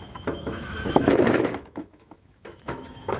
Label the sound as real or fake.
fake